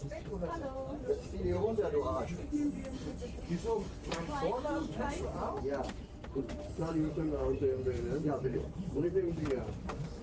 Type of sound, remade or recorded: remade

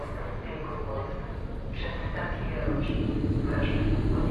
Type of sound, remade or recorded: recorded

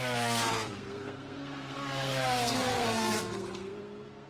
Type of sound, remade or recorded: remade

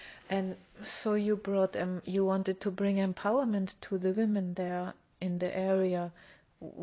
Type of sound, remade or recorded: remade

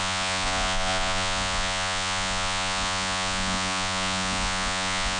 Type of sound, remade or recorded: remade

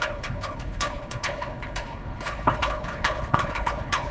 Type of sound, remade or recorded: remade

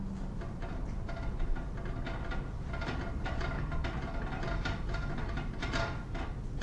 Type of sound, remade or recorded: recorded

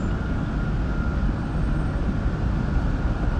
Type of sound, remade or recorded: recorded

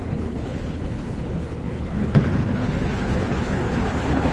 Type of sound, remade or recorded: remade